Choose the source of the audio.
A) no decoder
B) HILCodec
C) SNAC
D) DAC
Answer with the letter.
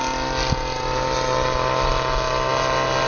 A